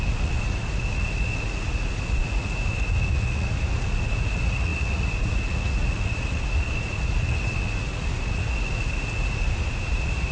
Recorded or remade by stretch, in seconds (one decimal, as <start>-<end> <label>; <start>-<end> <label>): 0.0-10.3 remade